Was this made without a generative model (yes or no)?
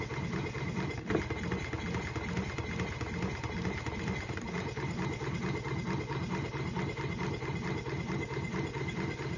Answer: yes